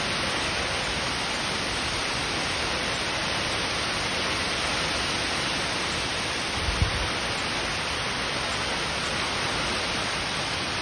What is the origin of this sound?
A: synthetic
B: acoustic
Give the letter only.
B